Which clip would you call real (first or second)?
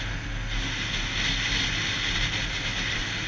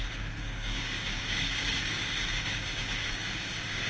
first